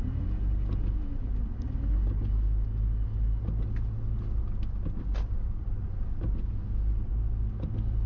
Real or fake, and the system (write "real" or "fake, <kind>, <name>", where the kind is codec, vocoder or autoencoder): real